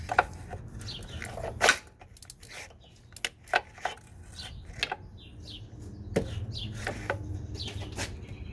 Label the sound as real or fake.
real